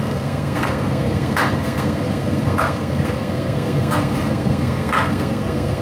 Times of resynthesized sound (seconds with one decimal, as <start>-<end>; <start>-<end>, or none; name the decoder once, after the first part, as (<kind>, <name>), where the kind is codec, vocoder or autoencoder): 0.0-5.8 (codec, SNAC)